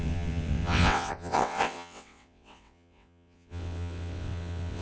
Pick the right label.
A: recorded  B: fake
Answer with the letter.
B